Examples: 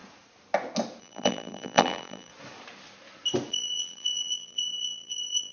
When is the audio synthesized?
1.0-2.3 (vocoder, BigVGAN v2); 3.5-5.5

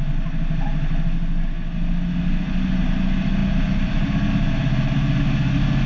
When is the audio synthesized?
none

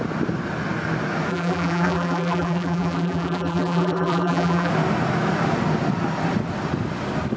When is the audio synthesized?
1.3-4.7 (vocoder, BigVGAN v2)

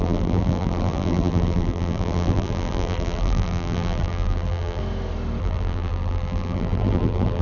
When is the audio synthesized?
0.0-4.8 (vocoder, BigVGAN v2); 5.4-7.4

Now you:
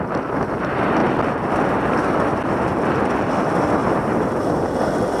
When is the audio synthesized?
3.8-4.3 (vocoder, BigVGAN v2)

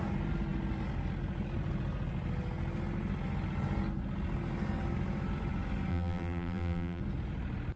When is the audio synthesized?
5.9-7.0 (vocoder, BigVGAN v2)

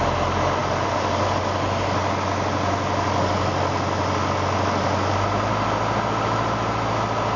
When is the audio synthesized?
0.6-1.4 (vocoder, BigVGAN v2)